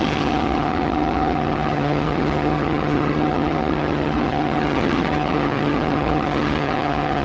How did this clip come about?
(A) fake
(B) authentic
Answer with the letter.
A